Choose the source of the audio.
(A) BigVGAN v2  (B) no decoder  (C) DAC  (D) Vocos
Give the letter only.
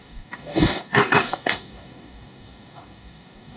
C